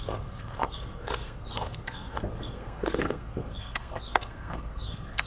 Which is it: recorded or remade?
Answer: remade